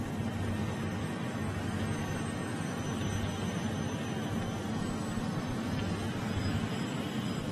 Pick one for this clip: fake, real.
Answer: real